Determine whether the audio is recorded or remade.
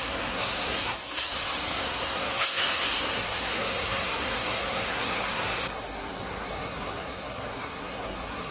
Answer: remade